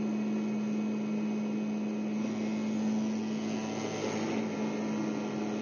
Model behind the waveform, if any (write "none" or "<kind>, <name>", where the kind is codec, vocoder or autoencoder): none